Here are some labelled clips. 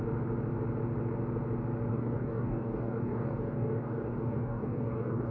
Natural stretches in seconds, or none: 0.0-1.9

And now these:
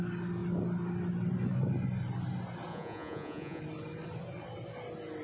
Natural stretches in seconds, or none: 0.0-2.7; 3.6-5.2

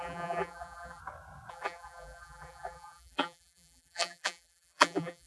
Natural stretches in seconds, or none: 1.0-1.5

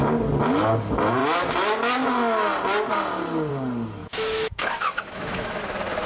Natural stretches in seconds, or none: 0.0-4.0; 5.6-6.1